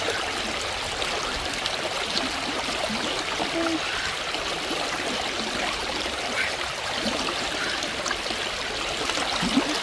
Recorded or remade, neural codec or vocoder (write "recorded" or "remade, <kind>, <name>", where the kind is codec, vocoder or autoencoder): recorded